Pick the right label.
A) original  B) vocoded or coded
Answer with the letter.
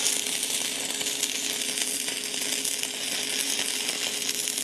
A